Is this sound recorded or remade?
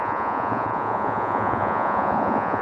remade